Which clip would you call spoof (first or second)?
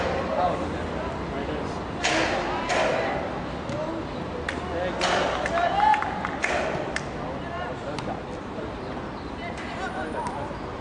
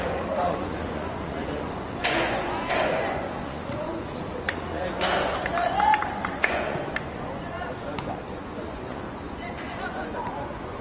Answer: second